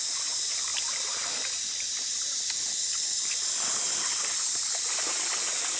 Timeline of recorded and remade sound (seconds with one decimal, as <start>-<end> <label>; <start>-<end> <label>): 0.0-5.8 recorded